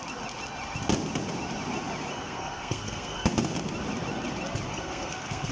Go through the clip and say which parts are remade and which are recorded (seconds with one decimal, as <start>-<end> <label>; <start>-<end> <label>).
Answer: 0.0-2.1 recorded; 2.1-3.3 remade; 3.3-4.7 recorded; 4.7-5.5 remade